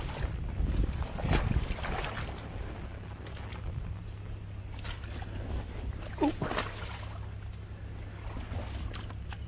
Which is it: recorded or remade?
recorded